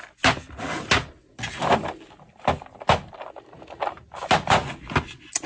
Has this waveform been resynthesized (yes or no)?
no